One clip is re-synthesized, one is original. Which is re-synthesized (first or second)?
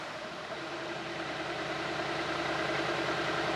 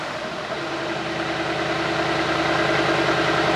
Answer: first